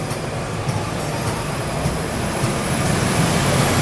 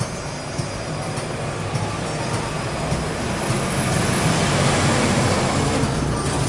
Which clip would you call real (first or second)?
second